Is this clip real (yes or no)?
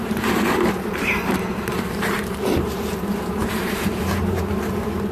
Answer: no